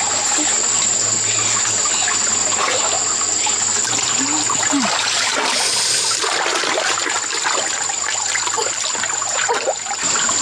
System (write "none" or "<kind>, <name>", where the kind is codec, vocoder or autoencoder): none